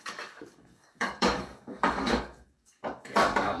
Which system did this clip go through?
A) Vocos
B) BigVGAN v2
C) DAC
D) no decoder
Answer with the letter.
C